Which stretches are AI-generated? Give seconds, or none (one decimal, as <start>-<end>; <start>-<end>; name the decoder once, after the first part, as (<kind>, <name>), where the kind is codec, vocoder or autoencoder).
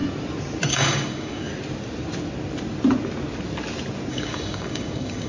0.7-1.5 (codec, DAC); 4.1-5.3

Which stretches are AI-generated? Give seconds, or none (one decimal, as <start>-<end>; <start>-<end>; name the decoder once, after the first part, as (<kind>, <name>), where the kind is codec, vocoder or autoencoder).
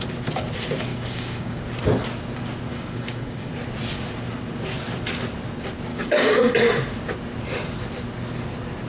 0.9-1.6 (codec, DAC); 2.7-3.5; 5.9-6.5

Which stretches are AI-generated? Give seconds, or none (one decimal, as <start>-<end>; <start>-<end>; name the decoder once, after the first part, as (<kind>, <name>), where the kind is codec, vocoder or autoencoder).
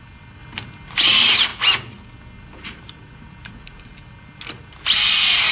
none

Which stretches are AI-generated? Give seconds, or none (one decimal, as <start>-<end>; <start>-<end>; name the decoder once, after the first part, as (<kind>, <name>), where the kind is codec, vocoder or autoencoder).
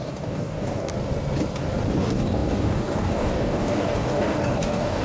0.0-0.9 (codec, DAC); 2.0-5.0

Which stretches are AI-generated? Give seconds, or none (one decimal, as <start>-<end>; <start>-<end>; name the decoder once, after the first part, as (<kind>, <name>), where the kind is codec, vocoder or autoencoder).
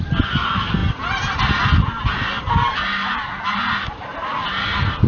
none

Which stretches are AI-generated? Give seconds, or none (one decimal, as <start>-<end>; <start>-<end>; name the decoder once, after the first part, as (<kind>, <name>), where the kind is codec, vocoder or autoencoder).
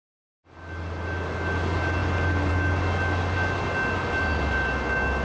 none